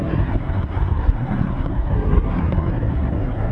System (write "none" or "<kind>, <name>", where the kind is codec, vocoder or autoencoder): codec, SNAC